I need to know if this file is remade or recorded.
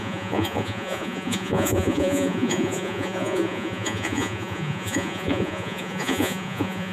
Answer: remade